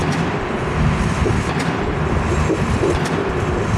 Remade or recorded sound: recorded